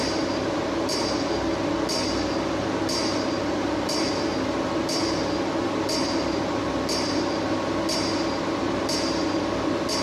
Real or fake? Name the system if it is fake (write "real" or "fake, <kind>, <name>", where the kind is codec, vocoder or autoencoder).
real